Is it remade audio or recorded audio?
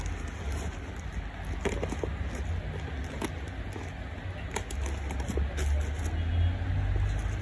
recorded